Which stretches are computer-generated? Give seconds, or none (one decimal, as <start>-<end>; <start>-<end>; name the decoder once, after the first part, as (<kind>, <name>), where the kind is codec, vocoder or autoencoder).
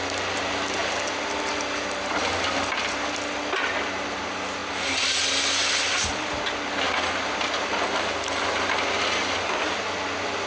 none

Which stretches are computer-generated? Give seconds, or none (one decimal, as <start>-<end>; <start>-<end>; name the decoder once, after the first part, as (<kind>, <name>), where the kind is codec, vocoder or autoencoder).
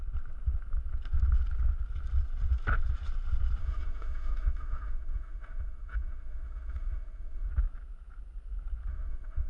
3.6-7.5 (autoencoder, DAC-VAE); 8.9-9.5